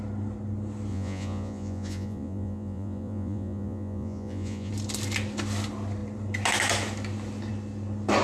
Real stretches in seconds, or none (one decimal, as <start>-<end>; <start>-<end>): 0.0-0.9; 4.7-8.2